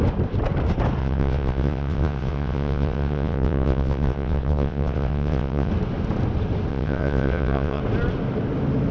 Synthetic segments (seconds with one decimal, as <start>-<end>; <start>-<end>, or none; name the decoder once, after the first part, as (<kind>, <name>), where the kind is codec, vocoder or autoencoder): 1.0-5.7 (vocoder, WaveNeXt); 6.7-7.8